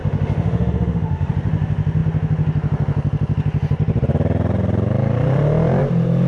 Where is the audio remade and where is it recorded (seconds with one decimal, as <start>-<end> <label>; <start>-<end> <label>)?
0.0-1.3 remade; 1.3-6.3 recorded

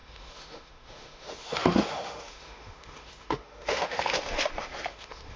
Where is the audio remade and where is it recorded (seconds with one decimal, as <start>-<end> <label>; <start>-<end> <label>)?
0.0-5.4 remade

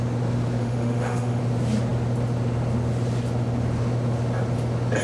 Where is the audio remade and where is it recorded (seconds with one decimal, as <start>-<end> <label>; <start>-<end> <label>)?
0.0-0.6 recorded; 0.6-1.4 remade; 1.4-5.0 recorded

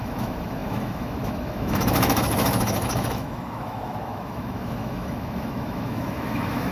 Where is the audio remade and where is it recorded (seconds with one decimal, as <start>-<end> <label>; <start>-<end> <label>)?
0.0-6.7 remade

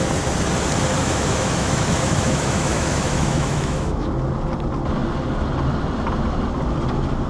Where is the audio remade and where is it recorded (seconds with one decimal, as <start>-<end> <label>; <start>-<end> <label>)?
0.0-1.0 recorded; 1.0-4.1 remade; 4.1-7.3 recorded